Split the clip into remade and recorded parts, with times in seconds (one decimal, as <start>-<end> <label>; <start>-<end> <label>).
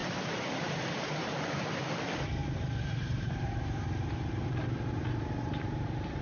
0.0-1.9 remade; 1.9-2.4 recorded; 2.4-6.2 remade